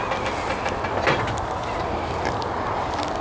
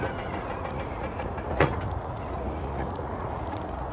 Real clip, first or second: first